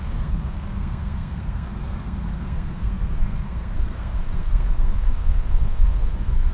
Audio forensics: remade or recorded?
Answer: remade